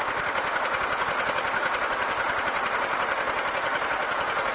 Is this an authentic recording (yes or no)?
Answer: yes